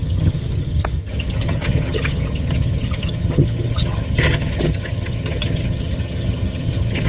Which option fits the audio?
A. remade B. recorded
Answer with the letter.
A